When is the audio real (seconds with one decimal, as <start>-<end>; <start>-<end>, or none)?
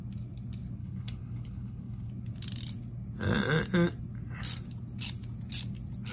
0.0-0.8; 2.1-6.1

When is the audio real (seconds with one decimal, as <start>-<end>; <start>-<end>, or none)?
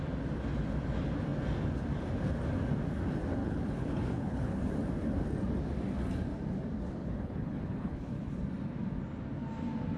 0.0-3.4; 4.6-7.0; 8.3-10.0